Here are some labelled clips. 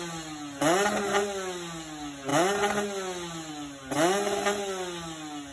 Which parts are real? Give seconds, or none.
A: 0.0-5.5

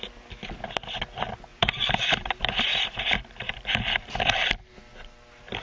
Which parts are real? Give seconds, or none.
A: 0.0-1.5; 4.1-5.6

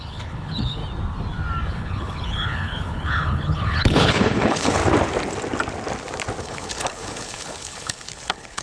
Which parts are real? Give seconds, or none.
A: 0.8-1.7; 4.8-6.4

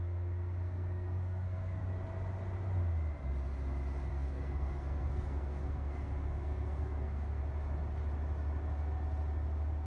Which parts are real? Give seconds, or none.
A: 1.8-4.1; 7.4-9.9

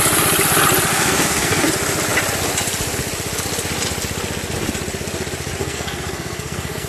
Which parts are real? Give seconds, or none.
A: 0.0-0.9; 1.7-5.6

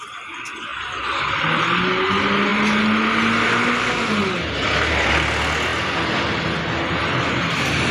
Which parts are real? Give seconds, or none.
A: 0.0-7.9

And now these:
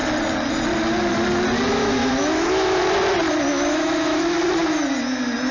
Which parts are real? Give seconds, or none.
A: 0.0-1.7; 2.8-3.5; 4.2-5.5

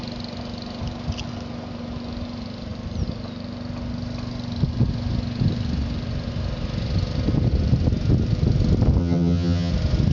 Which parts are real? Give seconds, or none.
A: 0.0-9.0; 9.7-10.1